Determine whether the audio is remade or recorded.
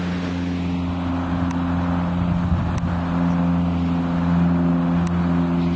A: recorded